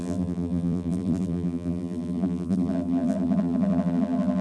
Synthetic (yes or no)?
yes